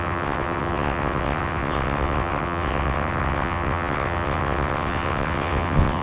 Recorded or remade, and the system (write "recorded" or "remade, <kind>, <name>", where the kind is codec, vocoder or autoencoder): remade, vocoder, WaveNeXt